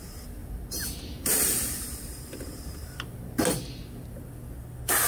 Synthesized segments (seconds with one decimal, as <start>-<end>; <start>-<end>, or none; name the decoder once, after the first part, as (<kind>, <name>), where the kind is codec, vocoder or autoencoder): 0.4-3.5 (vocoder, BigVGAN v2)